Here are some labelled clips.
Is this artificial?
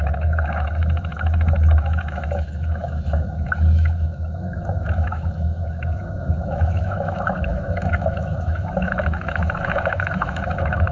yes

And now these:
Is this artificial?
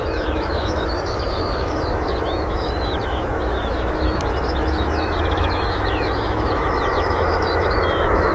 yes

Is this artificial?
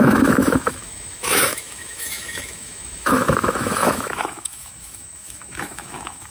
yes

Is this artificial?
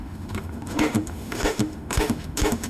yes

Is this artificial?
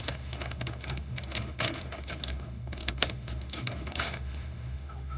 yes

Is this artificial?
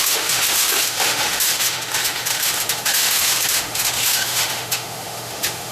yes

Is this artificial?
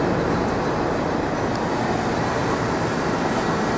no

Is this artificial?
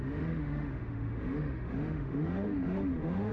yes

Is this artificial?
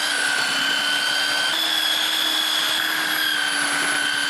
no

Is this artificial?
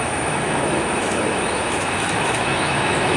yes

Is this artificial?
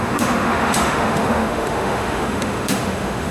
yes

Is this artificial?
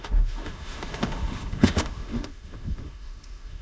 yes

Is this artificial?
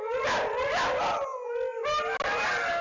no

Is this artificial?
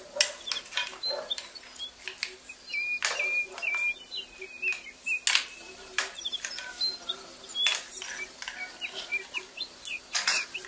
no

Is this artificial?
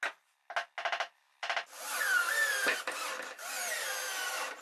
no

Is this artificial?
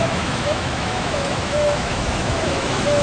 yes